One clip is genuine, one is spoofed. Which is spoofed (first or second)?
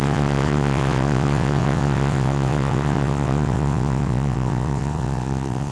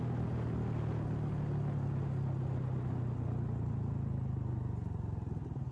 first